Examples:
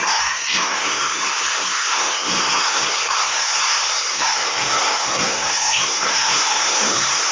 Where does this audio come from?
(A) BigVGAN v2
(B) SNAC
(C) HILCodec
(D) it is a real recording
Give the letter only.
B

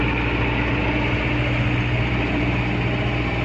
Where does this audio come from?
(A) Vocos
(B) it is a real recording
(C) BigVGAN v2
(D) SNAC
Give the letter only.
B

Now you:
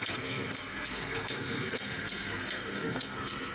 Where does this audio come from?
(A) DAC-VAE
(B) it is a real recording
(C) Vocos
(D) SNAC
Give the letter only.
D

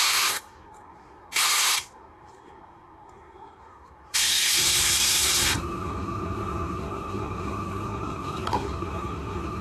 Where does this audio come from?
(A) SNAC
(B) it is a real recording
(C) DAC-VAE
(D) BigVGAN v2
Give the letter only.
A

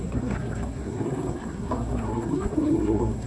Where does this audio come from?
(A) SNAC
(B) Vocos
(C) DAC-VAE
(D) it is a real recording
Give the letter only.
A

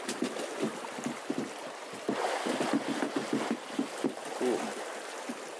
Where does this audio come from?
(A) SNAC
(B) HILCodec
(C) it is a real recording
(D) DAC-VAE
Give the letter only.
C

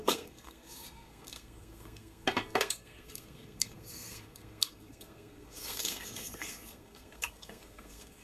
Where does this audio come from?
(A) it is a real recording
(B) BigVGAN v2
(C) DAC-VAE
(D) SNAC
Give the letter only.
D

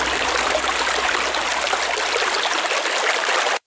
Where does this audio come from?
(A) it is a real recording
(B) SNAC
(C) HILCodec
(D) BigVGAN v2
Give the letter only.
A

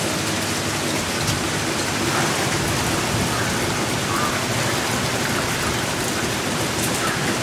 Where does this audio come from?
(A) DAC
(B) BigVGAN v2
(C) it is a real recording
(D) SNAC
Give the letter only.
C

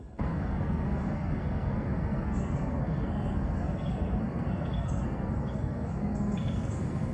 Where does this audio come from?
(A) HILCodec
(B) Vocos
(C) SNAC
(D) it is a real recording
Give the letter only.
C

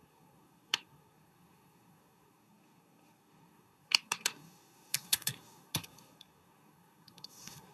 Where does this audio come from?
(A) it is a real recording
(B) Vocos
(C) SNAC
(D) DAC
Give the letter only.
C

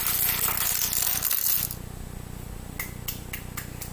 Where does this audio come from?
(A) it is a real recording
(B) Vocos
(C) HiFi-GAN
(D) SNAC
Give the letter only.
A